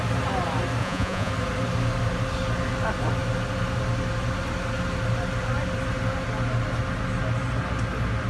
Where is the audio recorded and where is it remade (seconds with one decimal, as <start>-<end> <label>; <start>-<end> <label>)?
0.0-0.8 recorded; 0.8-1.3 remade; 1.3-8.3 recorded